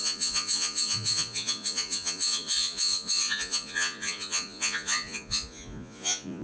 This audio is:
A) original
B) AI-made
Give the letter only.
B